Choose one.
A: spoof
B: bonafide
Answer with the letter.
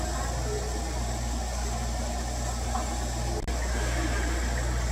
B